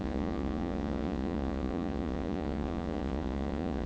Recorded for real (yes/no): no